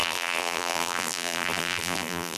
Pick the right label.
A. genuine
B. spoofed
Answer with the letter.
B